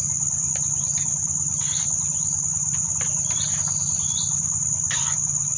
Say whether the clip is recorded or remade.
recorded